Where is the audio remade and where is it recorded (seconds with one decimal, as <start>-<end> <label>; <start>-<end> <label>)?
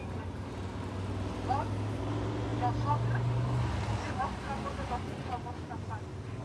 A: 0.0-6.4 recorded